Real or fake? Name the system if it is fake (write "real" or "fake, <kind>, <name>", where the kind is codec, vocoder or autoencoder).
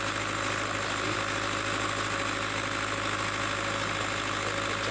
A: real